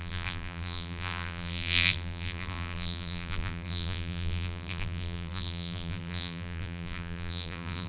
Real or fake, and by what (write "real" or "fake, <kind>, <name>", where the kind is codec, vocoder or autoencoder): fake, vocoder, BigVGAN v2